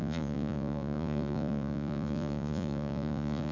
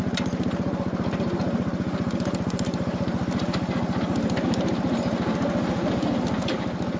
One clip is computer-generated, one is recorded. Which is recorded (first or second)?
second